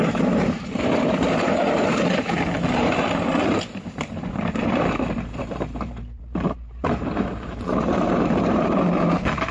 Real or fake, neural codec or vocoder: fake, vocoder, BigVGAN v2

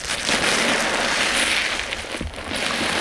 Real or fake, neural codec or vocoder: fake, vocoder, BigVGAN v2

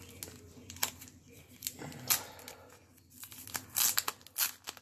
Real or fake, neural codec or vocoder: real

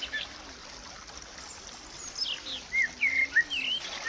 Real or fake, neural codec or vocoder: real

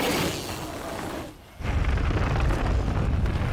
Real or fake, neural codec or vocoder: real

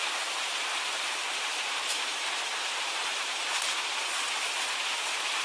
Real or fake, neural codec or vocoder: fake, vocoder, BigVGAN v2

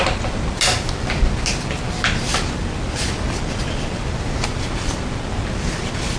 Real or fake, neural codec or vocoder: real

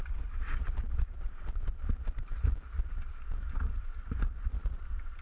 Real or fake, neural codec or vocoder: fake, vocoder, BigVGAN v2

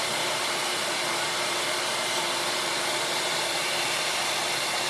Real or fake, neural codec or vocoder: fake, vocoder, BigVGAN v2